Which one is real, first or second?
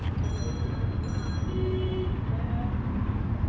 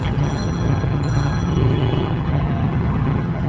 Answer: first